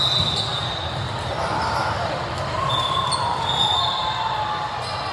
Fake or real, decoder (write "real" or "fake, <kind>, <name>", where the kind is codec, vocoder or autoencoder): real